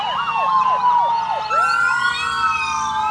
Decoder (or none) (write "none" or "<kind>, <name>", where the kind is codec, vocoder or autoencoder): none